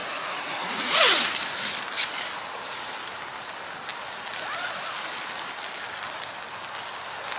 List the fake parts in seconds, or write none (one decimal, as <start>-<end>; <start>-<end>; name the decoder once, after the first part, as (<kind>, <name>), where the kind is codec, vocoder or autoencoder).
0.0-1.3 (vocoder, Vocos)